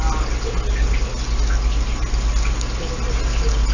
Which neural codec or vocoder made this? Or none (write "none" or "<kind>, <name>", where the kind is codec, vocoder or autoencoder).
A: none